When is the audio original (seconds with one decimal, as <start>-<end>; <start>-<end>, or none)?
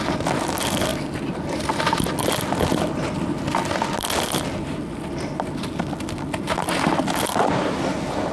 0.0-8.3